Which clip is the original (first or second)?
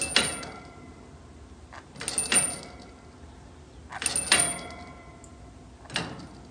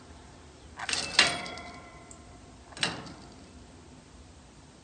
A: first